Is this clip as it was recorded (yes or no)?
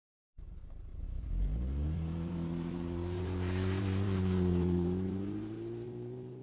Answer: no